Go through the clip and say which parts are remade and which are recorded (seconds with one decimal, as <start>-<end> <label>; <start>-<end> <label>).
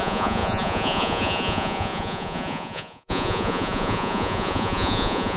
0.0-5.4 remade